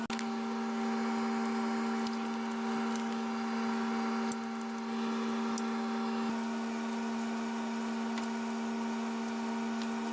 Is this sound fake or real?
real